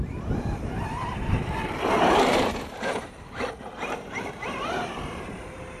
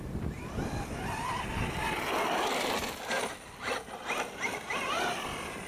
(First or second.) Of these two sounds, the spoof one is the first